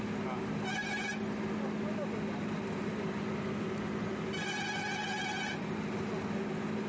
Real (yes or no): yes